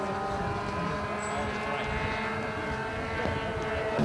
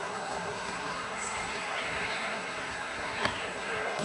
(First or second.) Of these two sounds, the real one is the first